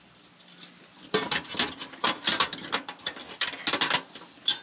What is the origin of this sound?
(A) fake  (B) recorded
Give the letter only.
B